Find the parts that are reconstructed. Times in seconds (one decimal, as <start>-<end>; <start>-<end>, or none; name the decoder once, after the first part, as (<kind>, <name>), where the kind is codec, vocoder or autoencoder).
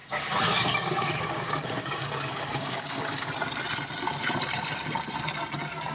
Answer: 0.0-3.3 (codec, DAC)